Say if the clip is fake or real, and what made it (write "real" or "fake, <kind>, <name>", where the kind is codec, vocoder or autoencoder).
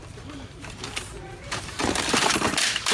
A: fake, vocoder, BigVGAN v2